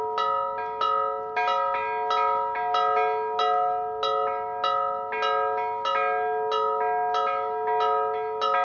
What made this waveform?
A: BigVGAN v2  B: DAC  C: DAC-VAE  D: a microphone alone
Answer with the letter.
D